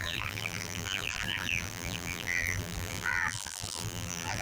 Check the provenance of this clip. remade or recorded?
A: remade